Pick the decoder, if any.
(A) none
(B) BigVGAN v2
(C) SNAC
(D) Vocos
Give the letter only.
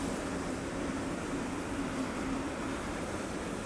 B